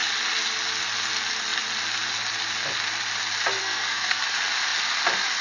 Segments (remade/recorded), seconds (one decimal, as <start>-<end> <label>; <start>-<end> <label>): 0.0-3.6 recorded; 3.6-4.2 remade; 4.2-5.4 recorded